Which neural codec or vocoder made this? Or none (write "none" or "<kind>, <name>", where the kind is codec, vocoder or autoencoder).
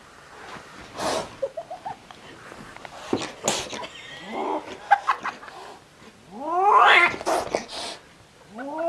none